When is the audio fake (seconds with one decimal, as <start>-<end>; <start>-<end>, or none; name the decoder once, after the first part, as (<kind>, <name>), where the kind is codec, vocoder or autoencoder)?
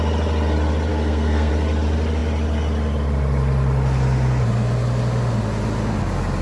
0.9-1.5 (codec, SNAC)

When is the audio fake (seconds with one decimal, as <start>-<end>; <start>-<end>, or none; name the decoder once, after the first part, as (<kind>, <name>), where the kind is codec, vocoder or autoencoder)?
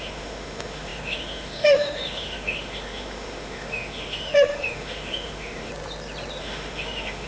0.0-5.7 (autoencoder, DAC-VAE); 6.4-7.3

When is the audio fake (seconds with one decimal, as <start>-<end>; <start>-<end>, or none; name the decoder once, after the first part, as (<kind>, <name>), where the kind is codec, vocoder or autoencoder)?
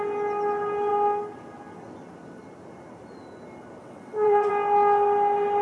3.8-4.5 (vocoder, WaveNeXt)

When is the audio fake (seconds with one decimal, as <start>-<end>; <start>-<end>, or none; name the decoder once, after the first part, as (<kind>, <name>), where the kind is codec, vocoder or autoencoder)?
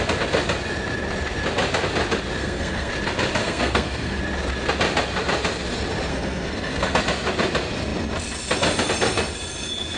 2.4-2.9 (codec, SNAC); 3.4-4.2; 6.1-7.0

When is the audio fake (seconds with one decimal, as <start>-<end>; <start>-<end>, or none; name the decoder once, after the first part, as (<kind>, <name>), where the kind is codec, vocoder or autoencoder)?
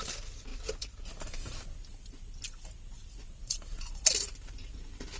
3.3-4.1 (vocoder, Vocos)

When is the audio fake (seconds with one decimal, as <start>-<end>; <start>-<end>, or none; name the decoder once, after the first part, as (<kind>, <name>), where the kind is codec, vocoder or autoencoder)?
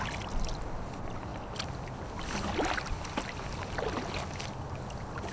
none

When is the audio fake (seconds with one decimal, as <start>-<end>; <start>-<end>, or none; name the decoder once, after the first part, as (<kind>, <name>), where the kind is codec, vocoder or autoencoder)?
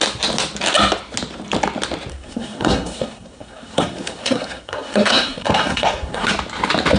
2.1-6.3 (codec, SNAC)